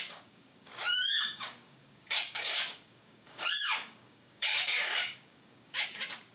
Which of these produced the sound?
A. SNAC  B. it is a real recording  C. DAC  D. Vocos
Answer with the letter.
C